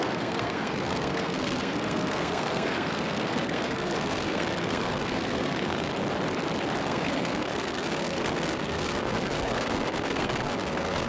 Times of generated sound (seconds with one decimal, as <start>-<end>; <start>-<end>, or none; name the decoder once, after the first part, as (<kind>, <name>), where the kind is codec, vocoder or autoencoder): 0.0-5.9 (codec, SNAC); 6.8-11.1

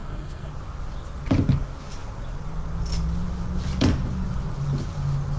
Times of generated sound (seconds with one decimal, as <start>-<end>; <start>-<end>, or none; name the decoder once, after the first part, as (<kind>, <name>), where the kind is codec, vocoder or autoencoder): 0.0-0.5 (codec, SNAC)

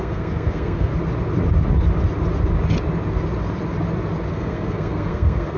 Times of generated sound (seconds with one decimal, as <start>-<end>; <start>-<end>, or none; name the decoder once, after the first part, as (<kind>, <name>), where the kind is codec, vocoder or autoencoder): 0.0-0.9 (codec, SNAC); 4.3-5.6

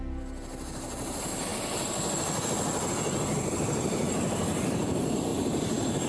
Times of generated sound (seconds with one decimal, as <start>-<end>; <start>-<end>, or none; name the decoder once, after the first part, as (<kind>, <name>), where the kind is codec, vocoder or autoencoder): none

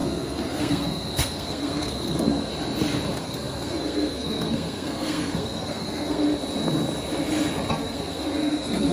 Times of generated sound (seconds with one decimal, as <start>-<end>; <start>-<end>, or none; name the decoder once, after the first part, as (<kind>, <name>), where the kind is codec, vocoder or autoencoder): 0.0-2.5 (codec, SNAC); 3.2-6.2; 7.7-8.9

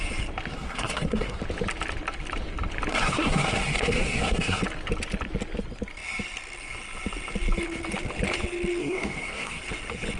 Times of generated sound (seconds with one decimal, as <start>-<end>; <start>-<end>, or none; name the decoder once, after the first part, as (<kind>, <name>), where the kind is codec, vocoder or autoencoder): 0.5-1.4 (codec, SNAC); 2.9-4.6; 8.8-9.6

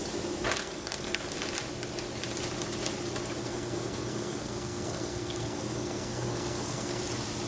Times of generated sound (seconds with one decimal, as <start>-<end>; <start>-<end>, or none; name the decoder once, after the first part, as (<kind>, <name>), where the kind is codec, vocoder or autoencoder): 0.6-1.2 (codec, SNAC); 3.4-7.0

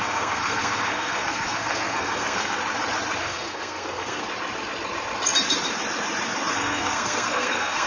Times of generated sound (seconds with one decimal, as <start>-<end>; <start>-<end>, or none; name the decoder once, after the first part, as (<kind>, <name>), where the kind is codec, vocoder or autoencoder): 0.0-2.6 (codec, SNAC); 3.2-4.2; 6.5-7.9